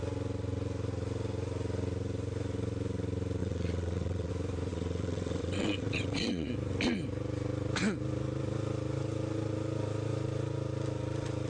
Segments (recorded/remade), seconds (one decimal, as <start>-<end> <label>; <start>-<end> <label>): 0.0-3.4 recorded; 3.4-4.3 remade; 4.3-4.7 recorded; 4.7-6.5 remade; 6.5-11.5 recorded